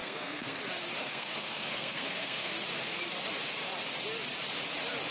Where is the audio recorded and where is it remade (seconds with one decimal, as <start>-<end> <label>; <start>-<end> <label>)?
0.0-0.6 remade; 0.6-1.0 recorded; 1.0-2.5 remade; 2.5-5.1 recorded